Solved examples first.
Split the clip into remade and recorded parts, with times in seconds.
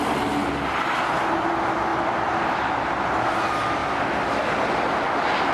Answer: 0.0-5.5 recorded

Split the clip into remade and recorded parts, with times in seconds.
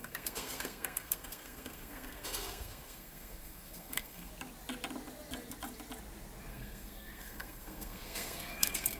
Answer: 0.0-4.3 remade; 4.3-6.5 recorded; 6.5-9.0 remade